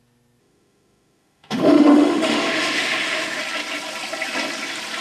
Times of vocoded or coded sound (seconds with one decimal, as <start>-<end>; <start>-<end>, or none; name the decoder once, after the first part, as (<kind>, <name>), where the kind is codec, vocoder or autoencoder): 0.4-3.4 (autoencoder, DAC-VAE)